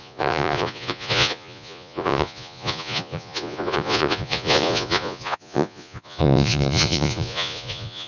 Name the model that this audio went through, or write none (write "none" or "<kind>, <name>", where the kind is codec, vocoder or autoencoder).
vocoder, Vocos